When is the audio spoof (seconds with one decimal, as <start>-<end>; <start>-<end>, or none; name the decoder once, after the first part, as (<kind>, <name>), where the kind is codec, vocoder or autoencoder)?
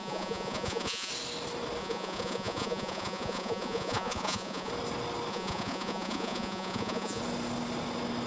0.0-1.1 (vocoder, Vocos); 1.8-4.7; 5.3-7.2